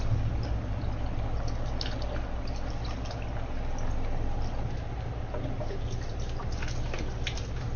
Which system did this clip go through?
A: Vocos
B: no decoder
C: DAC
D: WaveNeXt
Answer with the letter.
B